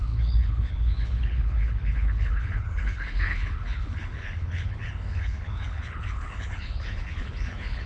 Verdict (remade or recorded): remade